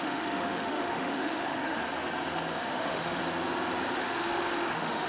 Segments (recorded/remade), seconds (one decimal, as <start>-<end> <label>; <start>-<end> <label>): 0.0-1.8 remade; 1.8-2.6 recorded; 2.6-3.2 remade; 3.2-3.9 recorded; 3.9-5.1 remade